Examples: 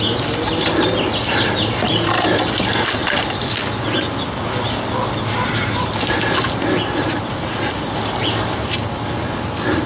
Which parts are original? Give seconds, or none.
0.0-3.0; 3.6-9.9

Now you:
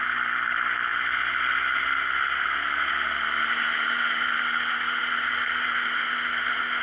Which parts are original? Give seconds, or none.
0.0-6.8

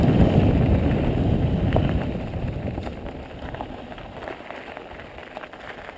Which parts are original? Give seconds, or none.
5.2-6.0

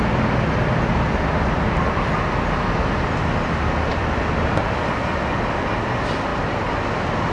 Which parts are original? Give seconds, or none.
0.0-7.3

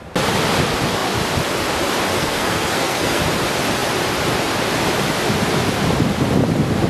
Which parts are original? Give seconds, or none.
0.0-2.1; 3.2-6.9

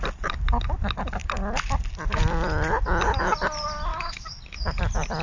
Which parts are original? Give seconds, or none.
0.0-3.9; 4.4-5.2

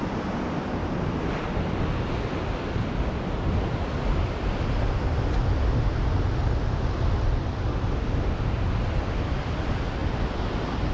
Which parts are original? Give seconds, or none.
0.0-10.9

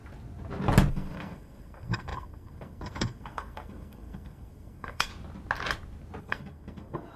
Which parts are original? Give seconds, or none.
0.0-0.9; 5.1-6.2